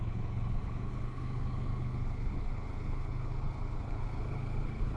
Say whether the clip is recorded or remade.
remade